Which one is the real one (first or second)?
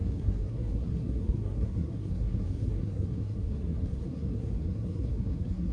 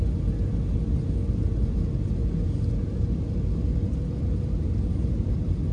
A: second